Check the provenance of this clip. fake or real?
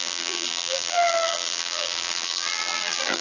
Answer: fake